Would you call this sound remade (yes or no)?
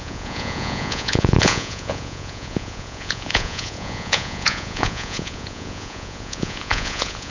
yes